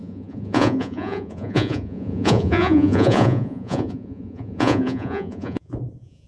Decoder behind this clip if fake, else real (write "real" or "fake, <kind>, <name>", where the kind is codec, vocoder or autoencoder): fake, vocoder, Vocos